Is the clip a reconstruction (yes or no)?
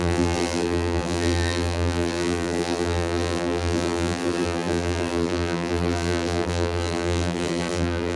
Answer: yes